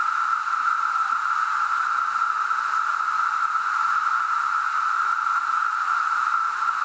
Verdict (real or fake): real